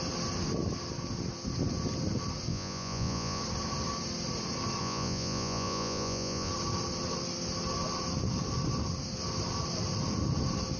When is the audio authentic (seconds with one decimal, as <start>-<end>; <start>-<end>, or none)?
0.0-2.5; 3.4-4.8; 6.5-10.8